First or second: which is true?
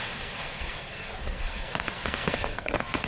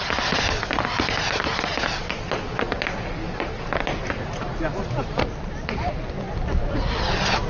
second